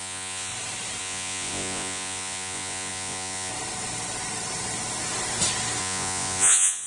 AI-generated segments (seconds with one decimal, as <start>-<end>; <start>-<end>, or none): 0.0-0.5; 1.0-3.5; 5.8-6.9